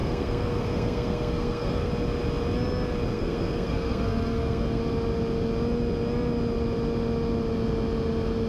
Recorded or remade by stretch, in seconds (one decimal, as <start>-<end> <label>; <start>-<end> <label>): 0.0-1.9 remade; 1.9-3.1 recorded; 3.1-4.8 remade; 4.8-8.5 recorded